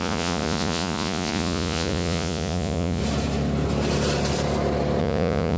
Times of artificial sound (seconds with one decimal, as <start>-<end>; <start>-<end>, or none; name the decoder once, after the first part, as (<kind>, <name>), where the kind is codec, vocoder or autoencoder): 0.0-3.0 (vocoder, Vocos); 5.0-5.6